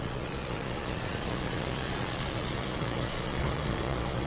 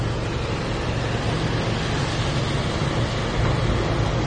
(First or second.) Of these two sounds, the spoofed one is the first